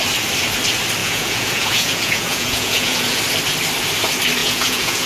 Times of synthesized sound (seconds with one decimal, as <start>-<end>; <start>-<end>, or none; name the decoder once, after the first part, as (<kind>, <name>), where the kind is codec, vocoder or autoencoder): 1.0-3.2 (vocoder, Vocos); 4.4-5.1